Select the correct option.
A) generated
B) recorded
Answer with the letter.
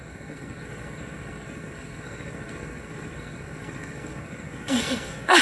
A